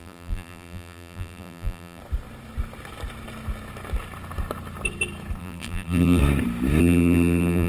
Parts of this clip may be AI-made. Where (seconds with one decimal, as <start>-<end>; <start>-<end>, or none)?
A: 0.0-2.0; 5.4-6.2; 6.8-7.7